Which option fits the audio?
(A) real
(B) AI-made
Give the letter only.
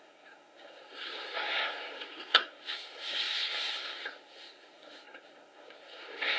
B